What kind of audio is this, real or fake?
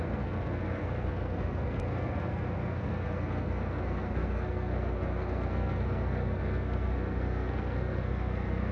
fake